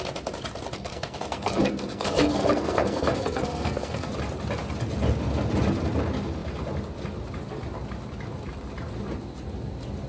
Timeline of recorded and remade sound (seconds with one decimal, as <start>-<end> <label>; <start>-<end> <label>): 0.0-0.8 recorded; 0.8-4.1 remade; 4.1-10.1 recorded